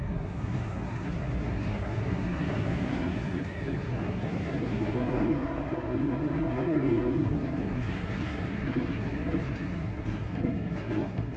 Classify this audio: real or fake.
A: fake